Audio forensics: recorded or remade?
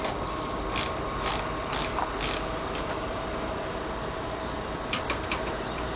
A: recorded